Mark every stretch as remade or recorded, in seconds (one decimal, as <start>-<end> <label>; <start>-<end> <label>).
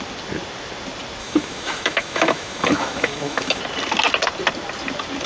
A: 0.0-1.2 recorded; 1.2-3.6 remade; 3.6-5.3 recorded